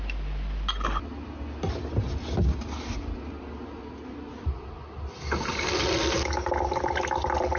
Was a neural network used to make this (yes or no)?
no